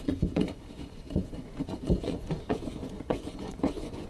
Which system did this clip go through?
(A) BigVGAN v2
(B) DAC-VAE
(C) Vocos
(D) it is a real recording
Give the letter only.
C